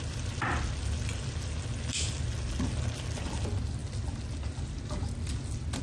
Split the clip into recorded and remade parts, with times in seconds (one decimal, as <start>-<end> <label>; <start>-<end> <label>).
0.0-5.8 recorded